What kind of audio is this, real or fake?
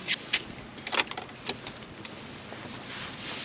real